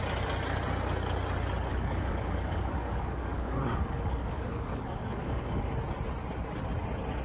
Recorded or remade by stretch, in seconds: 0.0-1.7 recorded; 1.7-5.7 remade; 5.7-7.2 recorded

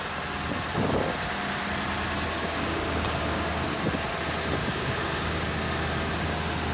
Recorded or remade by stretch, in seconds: 0.0-2.4 recorded; 2.4-3.5 remade; 3.5-4.6 recorded; 4.6-5.5 remade; 5.5-6.7 recorded

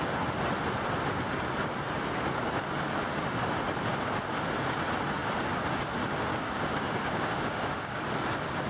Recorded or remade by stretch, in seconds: 0.0-6.3 recorded; 6.3-8.0 remade; 8.0-8.7 recorded

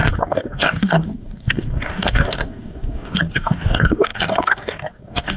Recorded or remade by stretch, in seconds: 0.0-5.4 remade

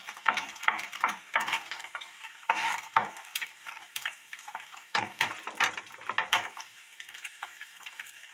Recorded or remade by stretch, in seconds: 0.0-5.3 remade; 5.3-6.3 recorded; 6.3-8.3 remade

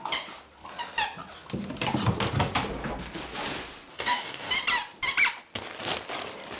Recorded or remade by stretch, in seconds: 0.0-3.9 recorded; 3.9-4.5 remade; 4.5-6.6 recorded

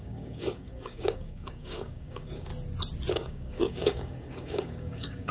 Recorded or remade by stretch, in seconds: 0.0-2.5 remade; 2.5-3.1 recorded; 3.1-5.3 remade

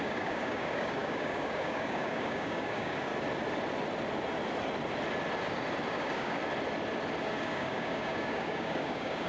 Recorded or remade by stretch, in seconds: 0.0-3.1 remade; 3.1-5.9 recorded; 5.9-6.4 remade; 6.4-7.2 recorded; 7.2-9.3 remade